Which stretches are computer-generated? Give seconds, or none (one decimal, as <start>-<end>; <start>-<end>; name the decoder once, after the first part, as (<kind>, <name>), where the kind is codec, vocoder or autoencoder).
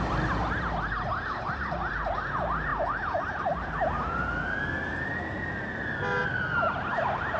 none